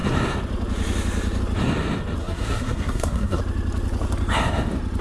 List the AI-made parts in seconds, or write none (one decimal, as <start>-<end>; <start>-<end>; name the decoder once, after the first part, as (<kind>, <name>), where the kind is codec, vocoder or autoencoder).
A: 2.2-3.4 (codec, SNAC)